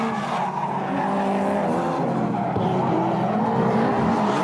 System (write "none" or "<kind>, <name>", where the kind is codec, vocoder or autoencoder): none